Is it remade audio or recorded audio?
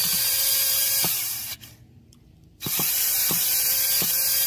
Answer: remade